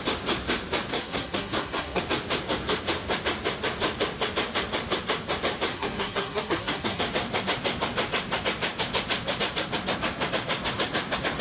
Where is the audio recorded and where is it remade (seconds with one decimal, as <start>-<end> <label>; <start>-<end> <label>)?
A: 0.0-0.9 recorded; 0.9-2.0 remade; 2.0-5.7 recorded; 5.7-7.0 remade; 7.0-11.4 recorded